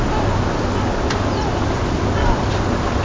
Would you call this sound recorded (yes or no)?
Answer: yes